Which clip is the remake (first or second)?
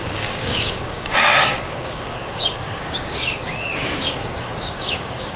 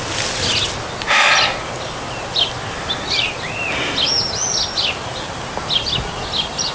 first